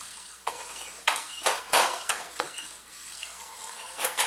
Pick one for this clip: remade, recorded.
remade